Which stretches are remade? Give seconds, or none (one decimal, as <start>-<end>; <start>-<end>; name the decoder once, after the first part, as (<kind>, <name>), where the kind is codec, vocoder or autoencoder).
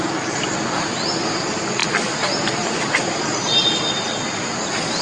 none